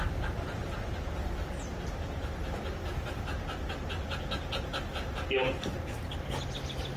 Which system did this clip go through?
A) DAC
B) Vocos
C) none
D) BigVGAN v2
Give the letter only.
C